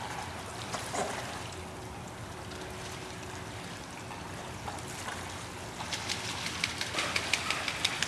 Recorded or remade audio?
recorded